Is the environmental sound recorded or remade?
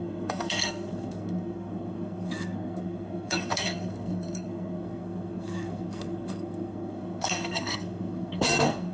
remade